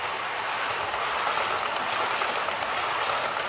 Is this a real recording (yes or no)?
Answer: yes